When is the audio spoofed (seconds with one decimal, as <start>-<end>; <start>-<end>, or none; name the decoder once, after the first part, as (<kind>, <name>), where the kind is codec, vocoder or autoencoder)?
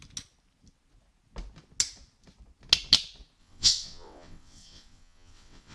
3.4-5.7 (vocoder, WaveNeXt)